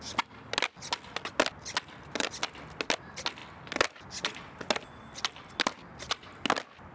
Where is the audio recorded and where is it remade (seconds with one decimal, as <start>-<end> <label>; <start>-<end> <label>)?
0.0-6.9 recorded